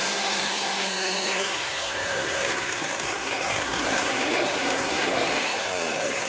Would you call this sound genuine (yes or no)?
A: no